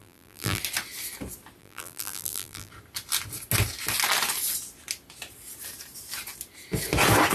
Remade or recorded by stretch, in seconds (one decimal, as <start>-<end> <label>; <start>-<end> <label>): 0.0-0.6 remade; 0.6-1.6 recorded; 1.6-2.7 remade; 2.7-7.3 recorded